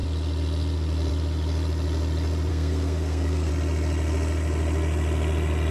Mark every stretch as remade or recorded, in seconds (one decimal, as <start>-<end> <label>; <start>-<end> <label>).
0.0-2.5 recorded; 2.5-3.5 remade; 3.5-5.7 recorded